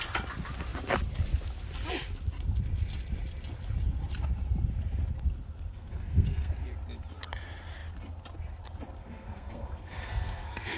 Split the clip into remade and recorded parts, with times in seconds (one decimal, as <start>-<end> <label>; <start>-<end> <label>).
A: 0.0-5.7 recorded; 5.7-6.5 remade; 6.5-9.0 recorded; 9.0-10.8 remade